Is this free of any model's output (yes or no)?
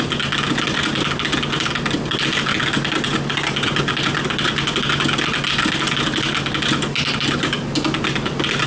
yes